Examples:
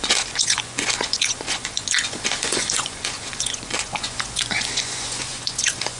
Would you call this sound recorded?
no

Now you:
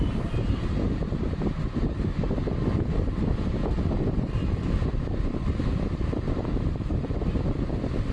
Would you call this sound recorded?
yes